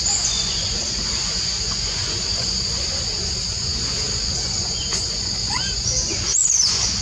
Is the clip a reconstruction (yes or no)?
yes